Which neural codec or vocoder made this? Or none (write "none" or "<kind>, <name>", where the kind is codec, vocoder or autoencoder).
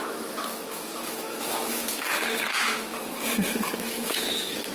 autoencoder, DAC-VAE